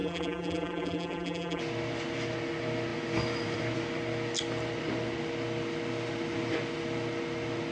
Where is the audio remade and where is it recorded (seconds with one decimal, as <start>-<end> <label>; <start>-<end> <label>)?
0.0-1.6 remade; 1.6-7.7 recorded